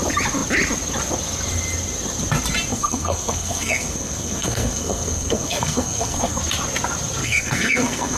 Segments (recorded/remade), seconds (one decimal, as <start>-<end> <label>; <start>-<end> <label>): 0.0-2.7 recorded; 2.7-6.4 remade; 6.4-7.2 recorded; 7.2-8.2 remade